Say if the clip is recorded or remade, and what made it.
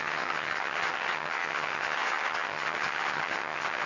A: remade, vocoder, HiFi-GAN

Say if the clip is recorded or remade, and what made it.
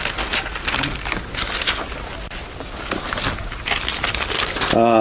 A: recorded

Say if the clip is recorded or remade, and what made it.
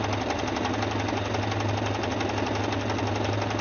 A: recorded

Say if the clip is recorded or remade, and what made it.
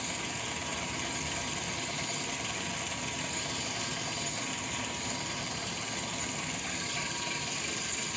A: recorded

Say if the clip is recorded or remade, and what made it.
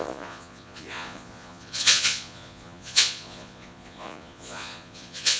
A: remade, vocoder, Vocos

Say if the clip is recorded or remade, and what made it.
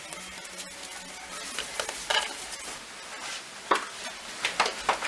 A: recorded